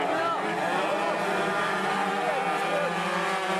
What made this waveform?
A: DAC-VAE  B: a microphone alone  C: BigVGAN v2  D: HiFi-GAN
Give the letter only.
B